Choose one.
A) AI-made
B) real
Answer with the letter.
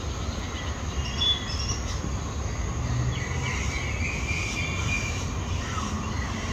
B